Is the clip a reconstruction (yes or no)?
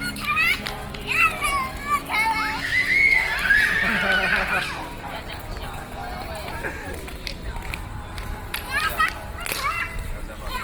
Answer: no